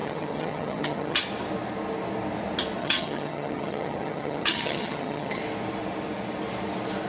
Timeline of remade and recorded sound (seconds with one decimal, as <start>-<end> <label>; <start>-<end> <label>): 0.0-1.2 remade; 1.2-2.8 recorded; 2.8-5.4 remade; 5.4-7.1 recorded